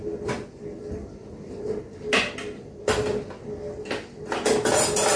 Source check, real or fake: real